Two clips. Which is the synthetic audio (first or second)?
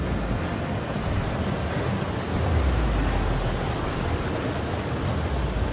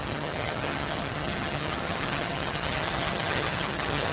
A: second